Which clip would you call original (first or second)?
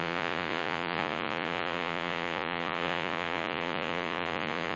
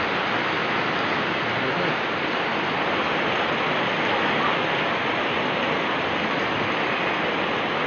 second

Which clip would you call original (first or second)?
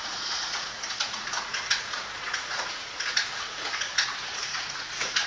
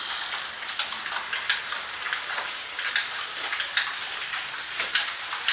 second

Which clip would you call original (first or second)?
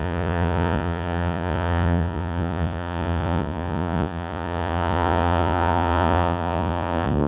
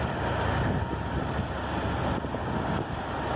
second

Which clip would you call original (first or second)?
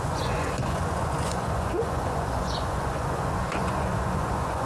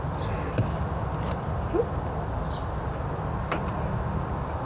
second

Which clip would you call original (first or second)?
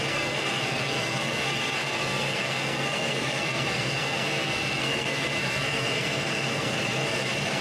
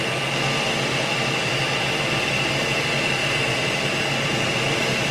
second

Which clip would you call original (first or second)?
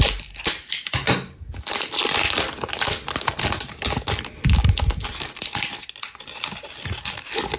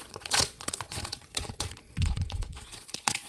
first